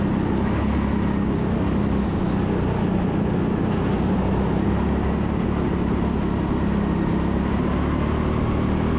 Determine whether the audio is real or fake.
real